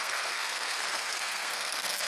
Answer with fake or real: fake